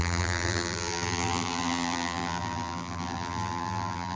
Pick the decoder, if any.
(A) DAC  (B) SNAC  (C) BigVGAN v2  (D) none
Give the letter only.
C